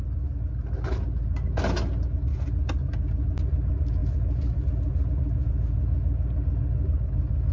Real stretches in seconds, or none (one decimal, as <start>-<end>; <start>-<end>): 0.0-7.5